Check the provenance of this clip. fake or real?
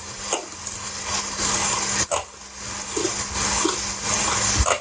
real